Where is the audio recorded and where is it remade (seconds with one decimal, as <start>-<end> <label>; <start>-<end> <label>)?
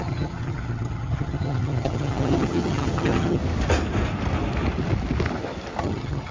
0.0-3.4 remade; 3.4-5.8 recorded; 5.8-6.3 remade